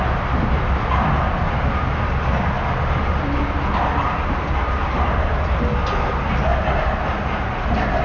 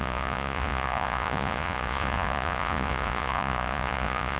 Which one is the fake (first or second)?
second